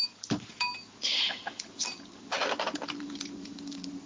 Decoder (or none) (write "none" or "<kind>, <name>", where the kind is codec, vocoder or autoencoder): none